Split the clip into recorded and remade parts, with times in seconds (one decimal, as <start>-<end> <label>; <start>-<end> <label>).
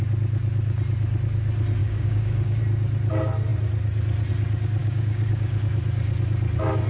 0.0-1.8 recorded; 1.8-2.6 remade; 2.6-4.8 recorded; 4.8-5.6 remade; 5.6-6.9 recorded